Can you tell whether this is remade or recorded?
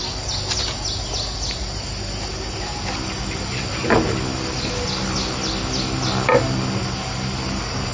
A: recorded